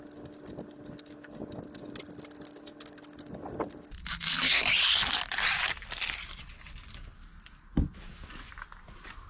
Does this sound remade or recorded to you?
recorded